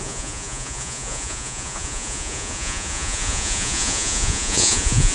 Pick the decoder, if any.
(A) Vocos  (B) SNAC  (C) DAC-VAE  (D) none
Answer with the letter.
A